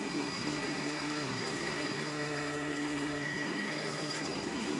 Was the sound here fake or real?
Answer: fake